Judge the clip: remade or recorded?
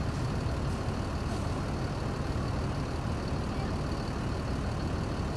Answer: recorded